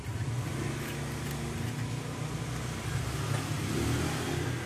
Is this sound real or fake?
real